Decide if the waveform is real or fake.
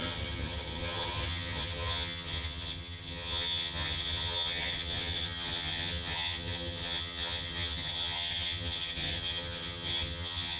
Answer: fake